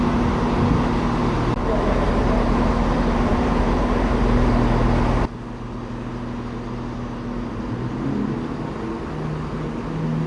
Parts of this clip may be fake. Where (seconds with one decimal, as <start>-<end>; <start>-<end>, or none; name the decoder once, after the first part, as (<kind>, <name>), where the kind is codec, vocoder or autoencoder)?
1.6-2.2 (vocoder, BigVGAN v2); 3.3-4.5